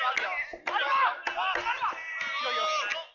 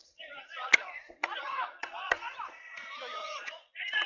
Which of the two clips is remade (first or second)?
second